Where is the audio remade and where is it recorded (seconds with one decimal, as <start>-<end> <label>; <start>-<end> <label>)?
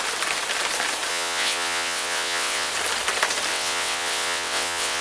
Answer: 0.0-1.1 recorded; 1.1-2.7 remade; 2.7-3.5 recorded; 3.5-5.0 remade